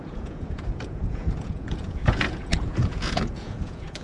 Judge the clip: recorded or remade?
remade